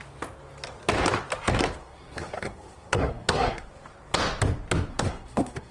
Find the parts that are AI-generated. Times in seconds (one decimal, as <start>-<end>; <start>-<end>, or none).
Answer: 1.8-3.7; 4.9-5.7